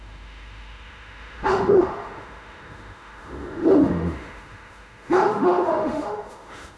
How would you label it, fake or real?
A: fake